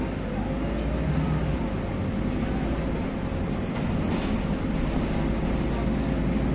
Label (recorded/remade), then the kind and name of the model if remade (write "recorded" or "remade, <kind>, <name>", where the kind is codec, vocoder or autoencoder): recorded